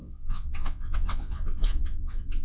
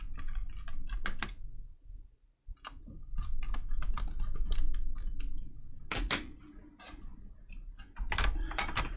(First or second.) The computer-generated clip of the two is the first